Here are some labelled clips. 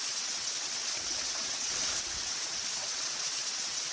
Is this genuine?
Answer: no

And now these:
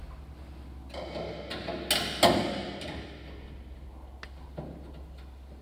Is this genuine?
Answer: yes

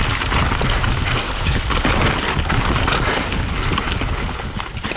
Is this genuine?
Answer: yes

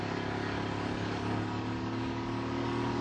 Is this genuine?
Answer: no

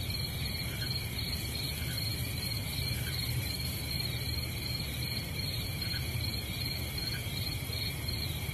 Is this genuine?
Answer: no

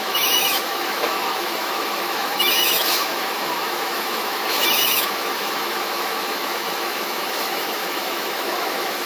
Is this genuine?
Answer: no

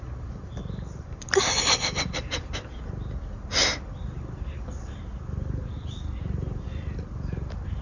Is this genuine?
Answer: yes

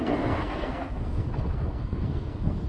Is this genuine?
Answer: no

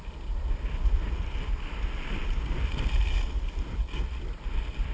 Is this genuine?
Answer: yes